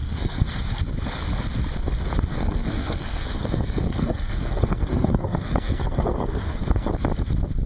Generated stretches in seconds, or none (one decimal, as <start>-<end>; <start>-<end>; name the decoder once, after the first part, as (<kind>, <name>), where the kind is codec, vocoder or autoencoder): 0.0-0.6 (codec, SNAC); 2.3-6.9